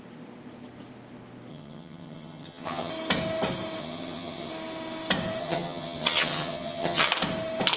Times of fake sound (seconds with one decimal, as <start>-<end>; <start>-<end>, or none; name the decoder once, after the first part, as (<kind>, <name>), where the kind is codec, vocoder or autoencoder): 1.5-2.9 (vocoder, HiFi-GAN); 3.8-4.5; 5.4-7.1